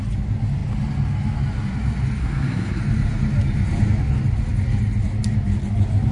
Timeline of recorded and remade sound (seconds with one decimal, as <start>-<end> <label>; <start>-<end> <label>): 0.0-2.2 recorded; 2.2-2.8 remade; 2.8-6.1 recorded